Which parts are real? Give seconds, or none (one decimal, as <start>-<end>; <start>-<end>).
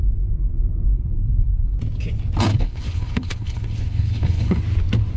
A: 0.0-0.9; 1.8-2.5; 4.6-5.2